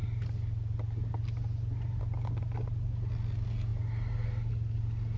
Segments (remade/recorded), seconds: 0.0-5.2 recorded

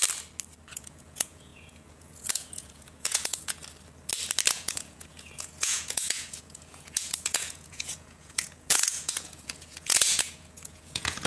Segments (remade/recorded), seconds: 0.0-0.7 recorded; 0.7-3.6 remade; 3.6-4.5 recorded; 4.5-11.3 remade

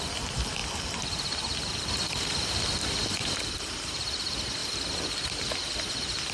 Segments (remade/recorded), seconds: 0.0-6.3 remade